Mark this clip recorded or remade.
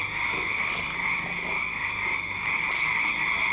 recorded